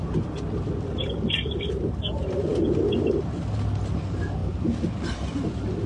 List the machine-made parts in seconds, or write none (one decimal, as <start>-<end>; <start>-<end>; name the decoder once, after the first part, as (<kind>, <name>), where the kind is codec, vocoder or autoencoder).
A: none